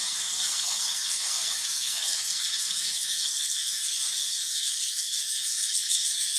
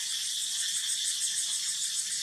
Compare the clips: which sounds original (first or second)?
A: second